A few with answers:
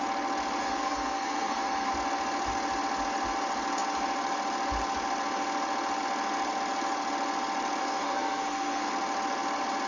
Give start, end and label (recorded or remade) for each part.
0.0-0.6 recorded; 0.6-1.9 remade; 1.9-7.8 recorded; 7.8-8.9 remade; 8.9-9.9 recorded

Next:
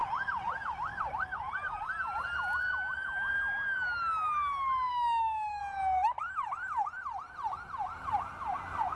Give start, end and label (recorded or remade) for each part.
0.0-4.9 recorded; 4.9-5.6 remade; 5.6-9.0 recorded

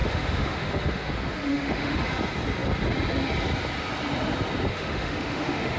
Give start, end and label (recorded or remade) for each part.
0.0-1.1 remade; 1.1-1.5 recorded; 1.5-2.1 remade; 2.1-4.7 recorded; 4.7-5.8 remade

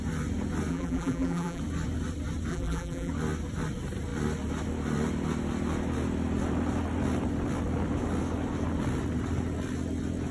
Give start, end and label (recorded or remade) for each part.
0.0-0.7 recorded; 0.7-1.6 remade; 1.6-2.5 recorded; 2.5-3.1 remade; 3.1-10.3 recorded

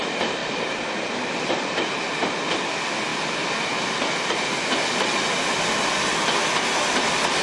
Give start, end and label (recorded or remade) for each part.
0.0-7.4 recorded

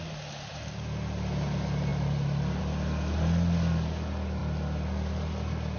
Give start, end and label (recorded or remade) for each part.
0.0-1.9 recorded; 1.9-2.6 remade; 2.6-5.8 recorded